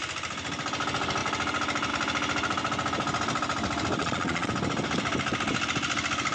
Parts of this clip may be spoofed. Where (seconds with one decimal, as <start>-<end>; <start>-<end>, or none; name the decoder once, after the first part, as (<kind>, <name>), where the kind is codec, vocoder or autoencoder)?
4.0-4.5 (vocoder, Vocos)